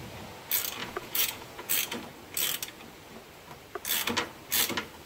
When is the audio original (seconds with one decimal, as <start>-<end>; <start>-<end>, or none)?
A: 0.0-0.8; 1.7-5.1